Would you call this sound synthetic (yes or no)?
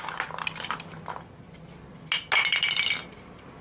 no